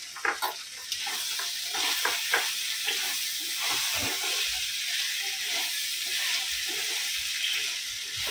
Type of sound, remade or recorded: recorded